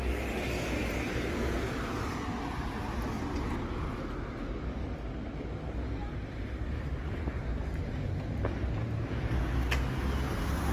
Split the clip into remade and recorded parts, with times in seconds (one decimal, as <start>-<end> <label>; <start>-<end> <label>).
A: 0.0-6.0 recorded; 6.0-9.4 remade; 9.4-10.7 recorded

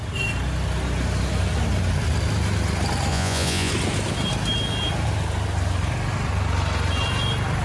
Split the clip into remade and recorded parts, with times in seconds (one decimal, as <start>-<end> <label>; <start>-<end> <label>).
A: 0.0-3.1 recorded; 3.1-3.7 remade; 3.7-7.6 recorded